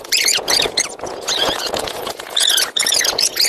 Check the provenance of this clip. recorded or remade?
remade